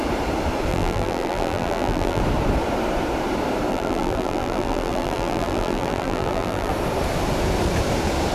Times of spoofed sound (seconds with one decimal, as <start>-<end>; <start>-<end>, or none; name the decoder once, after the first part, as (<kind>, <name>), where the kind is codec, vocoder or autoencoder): 0.7-2.2 (vocoder, BigVGAN v2); 3.7-6.7